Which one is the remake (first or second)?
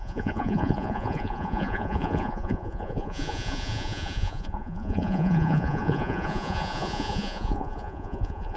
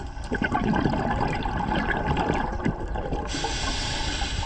first